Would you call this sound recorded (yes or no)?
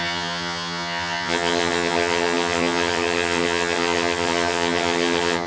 no